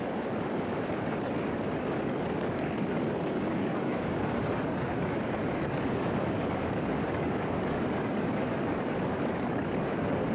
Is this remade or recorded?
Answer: remade